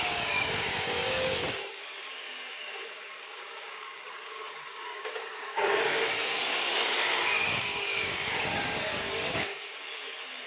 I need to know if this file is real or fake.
fake